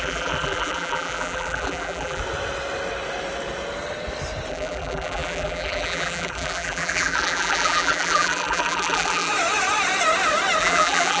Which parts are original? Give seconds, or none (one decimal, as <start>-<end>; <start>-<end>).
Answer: 2.2-4.5; 9.3-10.6